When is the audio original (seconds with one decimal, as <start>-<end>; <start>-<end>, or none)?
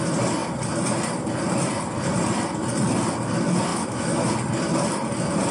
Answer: 0.0-3.7; 4.3-5.5